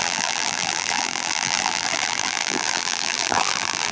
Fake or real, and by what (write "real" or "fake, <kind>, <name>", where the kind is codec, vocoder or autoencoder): fake, vocoder, BigVGAN v2